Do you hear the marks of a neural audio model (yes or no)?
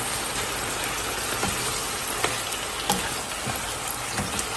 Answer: no